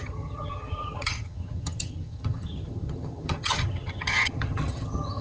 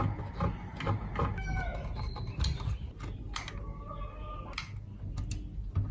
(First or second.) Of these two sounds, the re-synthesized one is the first